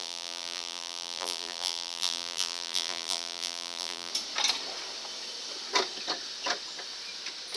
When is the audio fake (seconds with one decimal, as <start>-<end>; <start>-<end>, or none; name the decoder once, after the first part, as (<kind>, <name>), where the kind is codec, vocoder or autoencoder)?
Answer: 0.0-4.1 (vocoder, BigVGAN v2)